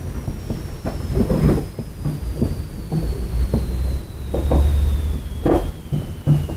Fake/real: fake